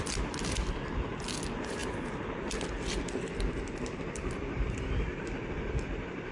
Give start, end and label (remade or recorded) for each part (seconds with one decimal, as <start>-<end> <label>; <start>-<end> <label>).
0.0-6.3 recorded